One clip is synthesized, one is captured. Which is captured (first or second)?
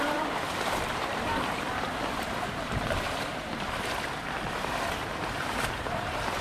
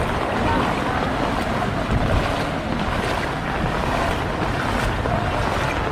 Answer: second